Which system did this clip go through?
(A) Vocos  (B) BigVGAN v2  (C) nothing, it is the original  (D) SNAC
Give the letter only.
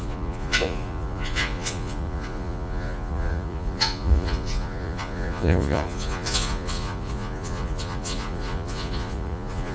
A